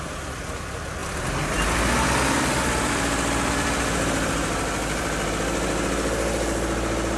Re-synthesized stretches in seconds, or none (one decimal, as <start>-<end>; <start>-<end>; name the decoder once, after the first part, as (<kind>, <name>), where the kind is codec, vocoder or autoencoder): 1.0-5.3 (vocoder, BigVGAN v2)